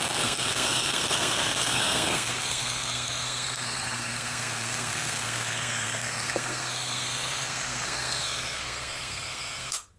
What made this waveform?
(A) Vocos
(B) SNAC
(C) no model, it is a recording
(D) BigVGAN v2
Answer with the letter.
B